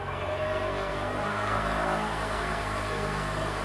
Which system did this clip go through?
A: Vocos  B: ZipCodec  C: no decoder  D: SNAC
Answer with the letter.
D